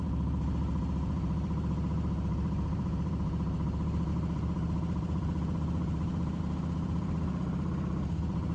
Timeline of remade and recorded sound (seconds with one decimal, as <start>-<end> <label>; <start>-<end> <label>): 0.0-8.5 remade